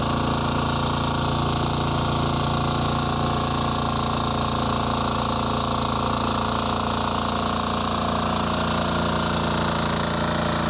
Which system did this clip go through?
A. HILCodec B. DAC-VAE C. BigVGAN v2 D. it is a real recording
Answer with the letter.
D